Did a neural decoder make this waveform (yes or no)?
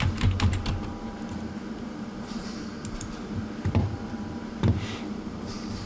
yes